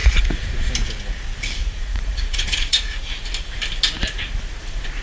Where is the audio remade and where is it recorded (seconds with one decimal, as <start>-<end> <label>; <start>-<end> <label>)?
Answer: 0.0-0.7 remade; 0.7-1.6 recorded; 1.6-3.1 remade; 3.1-5.0 recorded